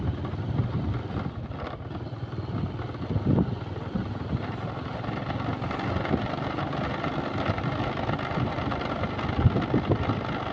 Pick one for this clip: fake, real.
real